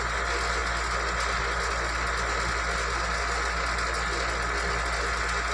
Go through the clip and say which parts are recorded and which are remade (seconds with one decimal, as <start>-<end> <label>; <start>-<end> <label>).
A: 0.0-5.5 recorded